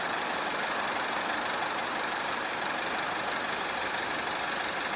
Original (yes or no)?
no